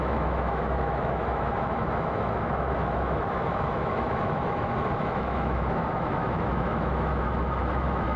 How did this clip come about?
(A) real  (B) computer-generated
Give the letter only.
B